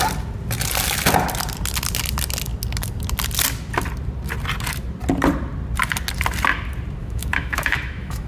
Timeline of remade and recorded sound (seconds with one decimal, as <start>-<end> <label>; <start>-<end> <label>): 0.0-7.0 recorded; 7.0-8.3 remade